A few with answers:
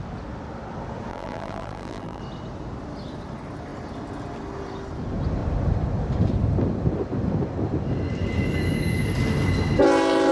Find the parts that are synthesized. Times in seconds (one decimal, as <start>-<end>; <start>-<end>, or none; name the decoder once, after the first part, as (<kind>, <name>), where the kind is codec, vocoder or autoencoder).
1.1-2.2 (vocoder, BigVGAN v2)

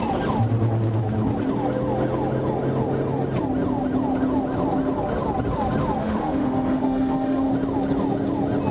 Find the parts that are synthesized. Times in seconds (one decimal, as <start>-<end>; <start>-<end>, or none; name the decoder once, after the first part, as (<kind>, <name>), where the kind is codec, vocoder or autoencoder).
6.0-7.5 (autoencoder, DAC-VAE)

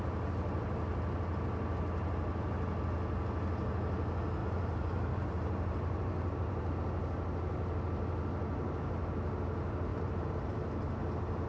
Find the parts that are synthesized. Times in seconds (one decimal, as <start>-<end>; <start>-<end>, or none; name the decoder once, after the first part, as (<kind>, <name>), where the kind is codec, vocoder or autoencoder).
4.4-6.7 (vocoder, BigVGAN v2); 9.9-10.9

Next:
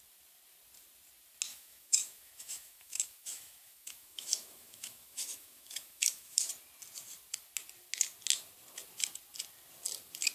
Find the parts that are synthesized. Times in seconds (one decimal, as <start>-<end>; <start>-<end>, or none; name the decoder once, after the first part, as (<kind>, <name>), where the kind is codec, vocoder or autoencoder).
1.5-6.5 (autoencoder, DAC-VAE)

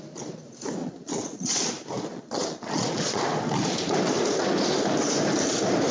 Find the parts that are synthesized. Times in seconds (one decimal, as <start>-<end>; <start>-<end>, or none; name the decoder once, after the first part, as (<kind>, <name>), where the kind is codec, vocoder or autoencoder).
0.8-1.7 (vocoder, Vocos); 2.1-3.2

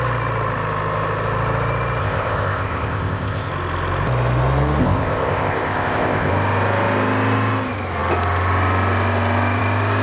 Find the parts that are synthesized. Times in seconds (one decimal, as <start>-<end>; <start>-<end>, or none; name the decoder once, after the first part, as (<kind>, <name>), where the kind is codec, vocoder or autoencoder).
2.0-3.5 (codec, ZipCodec); 4.8-6.3

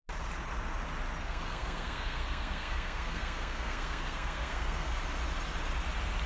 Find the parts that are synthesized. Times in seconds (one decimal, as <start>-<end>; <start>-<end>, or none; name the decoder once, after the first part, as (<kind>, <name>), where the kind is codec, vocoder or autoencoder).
1.2-5.0 (codec, SNAC)